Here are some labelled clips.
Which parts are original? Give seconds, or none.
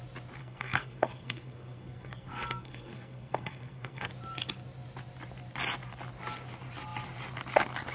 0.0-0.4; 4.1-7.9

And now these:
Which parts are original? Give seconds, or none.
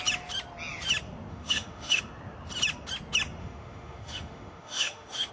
0.0-1.3; 2.0-3.4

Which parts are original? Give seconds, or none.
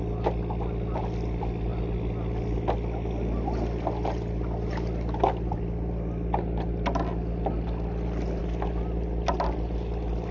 0.0-10.3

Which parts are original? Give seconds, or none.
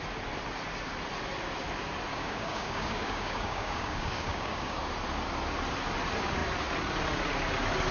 0.0-2.1; 4.8-7.9